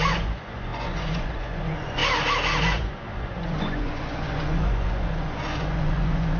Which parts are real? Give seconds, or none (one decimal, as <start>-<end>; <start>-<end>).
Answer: 2.0-2.6